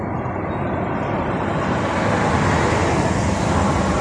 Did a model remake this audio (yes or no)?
no